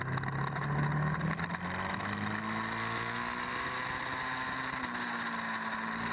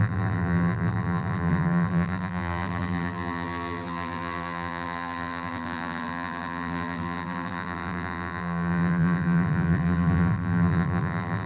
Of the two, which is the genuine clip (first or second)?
first